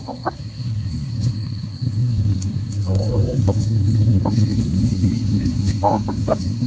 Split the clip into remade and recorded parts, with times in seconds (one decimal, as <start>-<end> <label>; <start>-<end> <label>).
0.0-6.7 remade